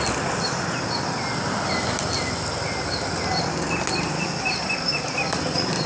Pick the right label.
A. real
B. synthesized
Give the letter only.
A